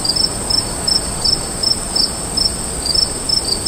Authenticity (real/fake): real